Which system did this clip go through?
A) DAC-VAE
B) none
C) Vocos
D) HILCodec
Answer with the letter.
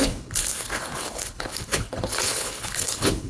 D